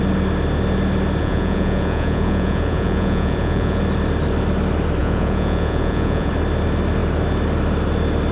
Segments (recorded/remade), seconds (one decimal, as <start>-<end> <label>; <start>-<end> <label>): 0.0-1.2 recorded; 1.2-3.8 remade; 3.8-5.0 recorded; 5.0-6.3 remade; 6.3-8.3 recorded